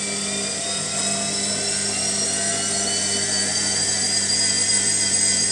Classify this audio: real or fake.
real